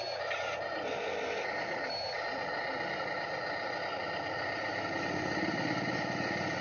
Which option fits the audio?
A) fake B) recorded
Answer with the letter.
B